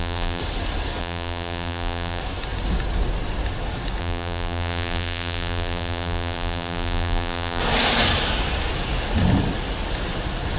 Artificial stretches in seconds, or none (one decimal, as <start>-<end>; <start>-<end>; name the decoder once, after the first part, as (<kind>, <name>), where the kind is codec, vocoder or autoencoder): 0.0-0.4 (vocoder, BigVGAN v2); 1.0-2.2; 4.0-7.6